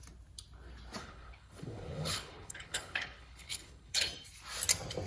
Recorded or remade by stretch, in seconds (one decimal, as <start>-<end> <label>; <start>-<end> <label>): 0.0-1.0 recorded; 1.0-4.1 remade; 4.1-5.1 recorded